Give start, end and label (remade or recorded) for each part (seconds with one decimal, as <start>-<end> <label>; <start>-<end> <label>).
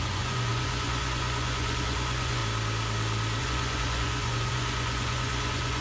0.0-2.4 remade; 2.4-3.4 recorded; 3.4-5.8 remade